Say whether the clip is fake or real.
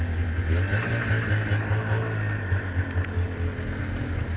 real